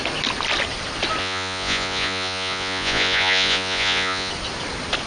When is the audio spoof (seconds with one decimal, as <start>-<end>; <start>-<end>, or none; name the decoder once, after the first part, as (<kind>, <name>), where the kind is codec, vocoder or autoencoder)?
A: 1.2-4.3 (vocoder, Vocos)